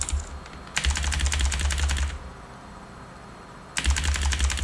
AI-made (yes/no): no